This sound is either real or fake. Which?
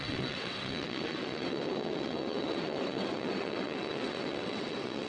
fake